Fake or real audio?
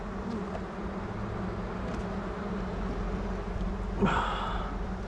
real